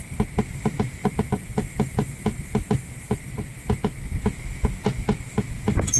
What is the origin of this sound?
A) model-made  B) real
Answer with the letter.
B